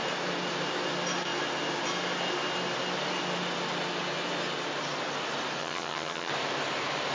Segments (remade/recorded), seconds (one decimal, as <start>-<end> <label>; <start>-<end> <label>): 0.0-5.6 recorded; 5.6-6.3 remade; 6.3-7.1 recorded

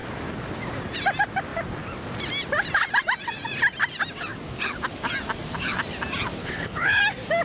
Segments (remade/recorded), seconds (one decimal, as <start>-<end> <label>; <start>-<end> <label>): 0.0-6.4 recorded; 6.4-7.0 remade; 7.0-7.4 recorded

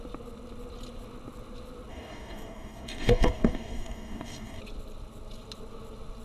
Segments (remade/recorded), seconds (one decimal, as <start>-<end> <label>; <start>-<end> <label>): 0.0-1.9 recorded; 1.9-4.6 remade; 4.6-6.2 recorded

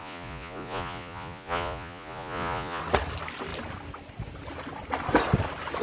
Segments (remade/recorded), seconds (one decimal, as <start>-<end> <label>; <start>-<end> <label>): 0.0-2.8 remade; 2.8-5.8 recorded

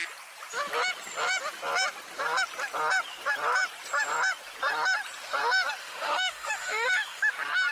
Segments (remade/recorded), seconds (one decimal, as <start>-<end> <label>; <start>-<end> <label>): 0.0-5.8 recorded; 5.8-7.3 remade; 7.3-7.7 recorded

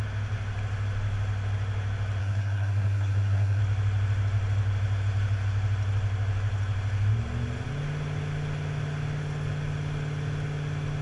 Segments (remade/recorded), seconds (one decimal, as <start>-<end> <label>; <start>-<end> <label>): 0.0-2.2 recorded; 2.2-3.6 remade; 3.6-11.0 recorded